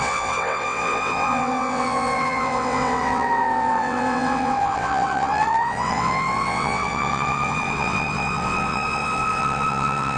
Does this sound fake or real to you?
fake